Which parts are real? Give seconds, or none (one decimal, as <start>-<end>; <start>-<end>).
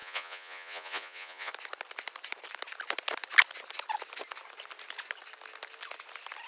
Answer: 1.5-6.5